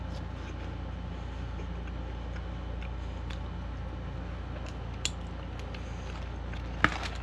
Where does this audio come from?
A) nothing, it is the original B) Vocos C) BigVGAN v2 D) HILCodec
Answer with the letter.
A